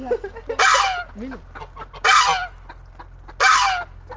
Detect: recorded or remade recorded